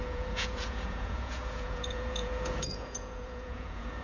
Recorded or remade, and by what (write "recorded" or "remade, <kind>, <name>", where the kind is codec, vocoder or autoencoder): remade, vocoder, Vocos